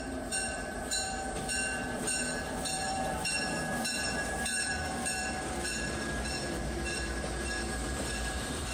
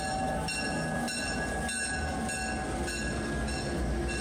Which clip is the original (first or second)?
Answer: second